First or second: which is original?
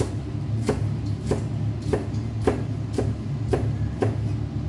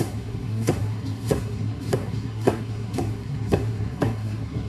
first